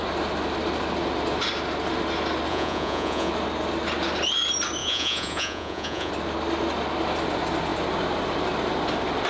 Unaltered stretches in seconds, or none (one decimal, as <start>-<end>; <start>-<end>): 0.0-2.5; 3.3-4.8; 6.1-9.3